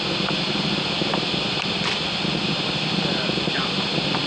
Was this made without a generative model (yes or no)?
yes